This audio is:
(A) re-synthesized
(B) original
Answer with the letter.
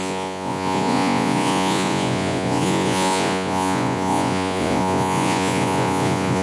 A